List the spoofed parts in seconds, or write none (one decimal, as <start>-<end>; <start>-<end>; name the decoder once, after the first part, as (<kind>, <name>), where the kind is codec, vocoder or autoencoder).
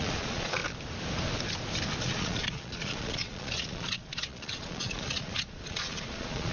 0.0-0.6 (vocoder, Vocos); 2.0-6.5